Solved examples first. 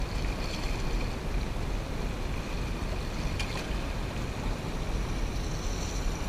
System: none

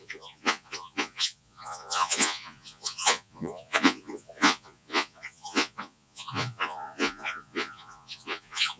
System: vocoder, Vocos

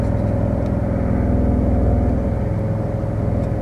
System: none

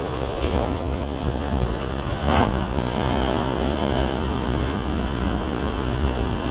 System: vocoder, Vocos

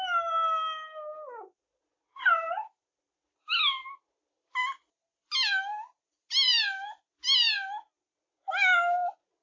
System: none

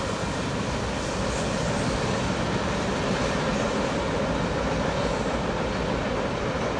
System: none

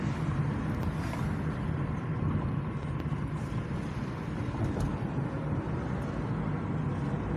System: none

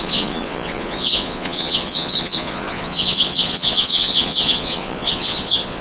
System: vocoder, Vocos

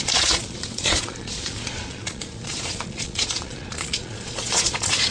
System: vocoder, Vocos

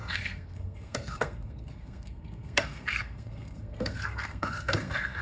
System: codec, SNAC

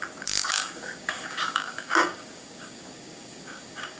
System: codec, DAC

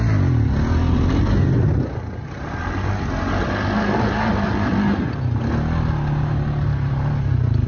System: none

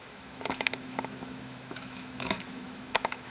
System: autoencoder, DAC-VAE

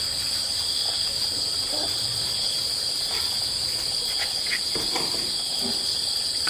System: none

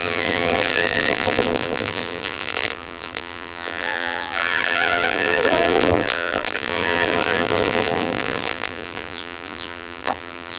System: vocoder, BigVGAN v2